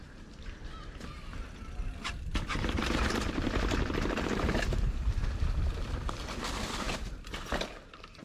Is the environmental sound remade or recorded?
remade